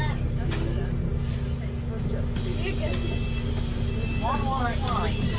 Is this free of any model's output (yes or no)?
yes